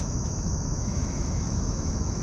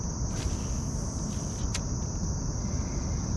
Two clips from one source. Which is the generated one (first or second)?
first